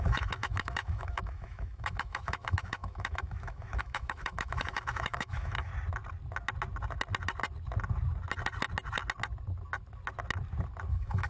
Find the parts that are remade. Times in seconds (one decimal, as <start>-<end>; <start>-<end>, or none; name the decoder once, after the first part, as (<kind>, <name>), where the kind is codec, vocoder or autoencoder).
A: 0.0-5.7 (autoencoder, DAC-VAE); 10.9-11.3

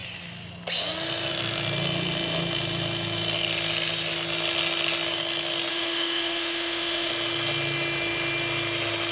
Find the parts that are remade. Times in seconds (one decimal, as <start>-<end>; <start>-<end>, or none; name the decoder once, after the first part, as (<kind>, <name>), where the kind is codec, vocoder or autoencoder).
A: 5.7-7.1 (autoencoder, DAC-VAE)

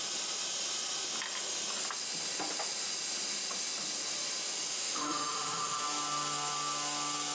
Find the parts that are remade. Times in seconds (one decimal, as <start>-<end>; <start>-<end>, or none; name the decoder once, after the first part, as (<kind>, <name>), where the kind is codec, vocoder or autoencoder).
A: 4.7-5.8 (autoencoder, DAC-VAE)

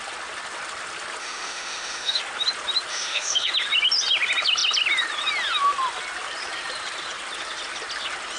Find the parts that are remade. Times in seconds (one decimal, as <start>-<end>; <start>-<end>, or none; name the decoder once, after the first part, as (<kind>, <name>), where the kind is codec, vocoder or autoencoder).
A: 1.2-2.2 (autoencoder, DAC-VAE); 2.9-3.5

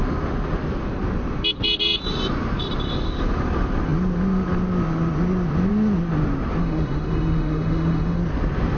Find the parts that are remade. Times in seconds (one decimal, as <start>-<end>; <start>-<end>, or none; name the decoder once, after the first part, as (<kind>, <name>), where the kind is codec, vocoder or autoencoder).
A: 6.6-8.2 (autoencoder, DAC-VAE)